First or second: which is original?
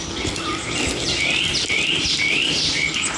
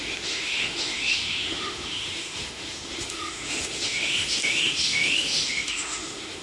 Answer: first